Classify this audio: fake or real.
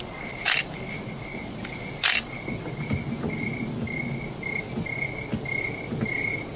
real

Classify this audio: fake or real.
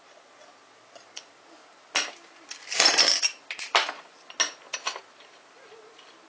real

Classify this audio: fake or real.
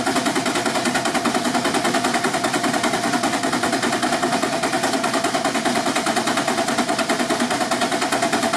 real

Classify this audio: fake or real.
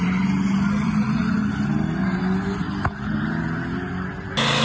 real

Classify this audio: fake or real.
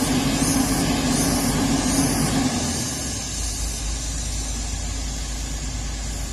real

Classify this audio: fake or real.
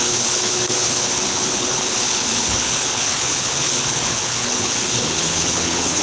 fake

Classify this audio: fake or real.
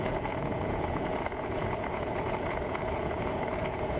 fake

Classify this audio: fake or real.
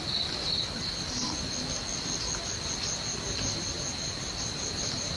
real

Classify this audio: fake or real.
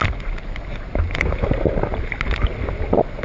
real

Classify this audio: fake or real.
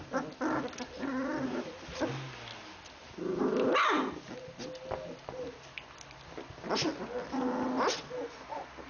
real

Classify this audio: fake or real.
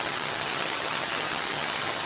fake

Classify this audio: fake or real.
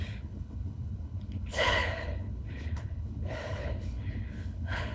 fake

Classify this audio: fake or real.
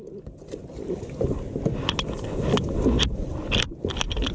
real